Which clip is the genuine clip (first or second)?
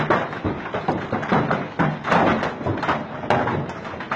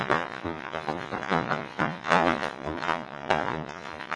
first